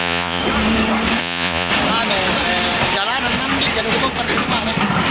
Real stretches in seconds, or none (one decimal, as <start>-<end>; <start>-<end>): 0.4-1.2; 1.7-5.1